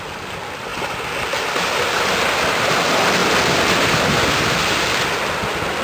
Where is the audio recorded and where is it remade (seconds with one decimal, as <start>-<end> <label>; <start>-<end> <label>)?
0.0-5.8 recorded